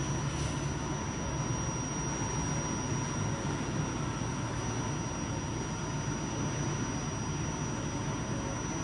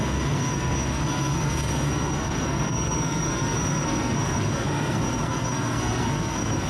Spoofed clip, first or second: second